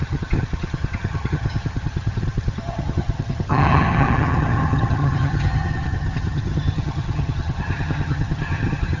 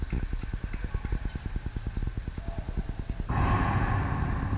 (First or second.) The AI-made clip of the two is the first